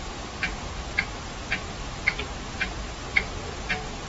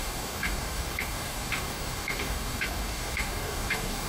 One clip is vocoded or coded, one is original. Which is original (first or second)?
first